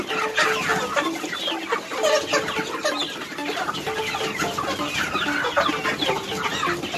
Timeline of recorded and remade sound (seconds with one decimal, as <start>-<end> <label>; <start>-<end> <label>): 0.0-3.4 recorded; 3.4-4.0 remade; 4.0-7.0 recorded